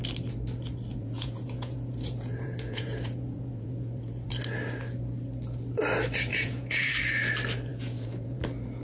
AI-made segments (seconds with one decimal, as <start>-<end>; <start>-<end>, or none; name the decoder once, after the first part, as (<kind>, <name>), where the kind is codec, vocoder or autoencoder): 0.9-4.3 (vocoder, Vocos); 6.3-6.9; 7.7-8.4